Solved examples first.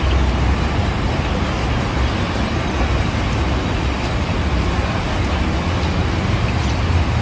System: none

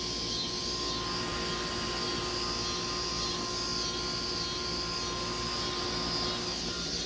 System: none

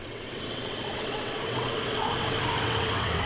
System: vocoder, WaveNeXt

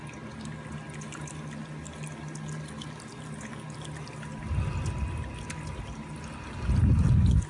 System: none